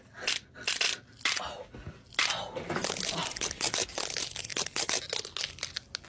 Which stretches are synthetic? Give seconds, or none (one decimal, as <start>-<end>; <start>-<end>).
none